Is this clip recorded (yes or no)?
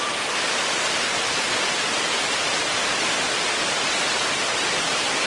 yes